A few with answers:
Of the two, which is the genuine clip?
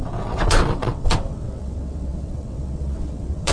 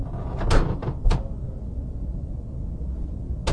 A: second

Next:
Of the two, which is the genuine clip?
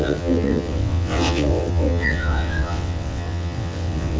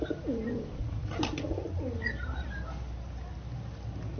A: second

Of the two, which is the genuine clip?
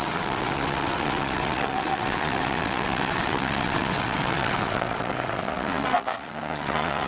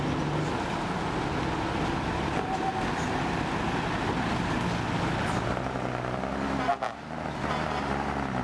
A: second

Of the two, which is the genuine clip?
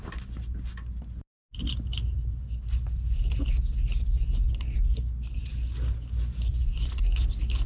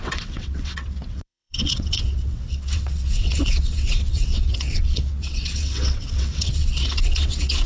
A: first